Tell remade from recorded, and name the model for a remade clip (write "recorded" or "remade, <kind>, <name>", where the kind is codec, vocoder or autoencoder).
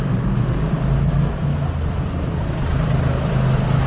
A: recorded